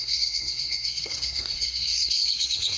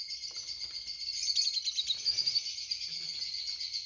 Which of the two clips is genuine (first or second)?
second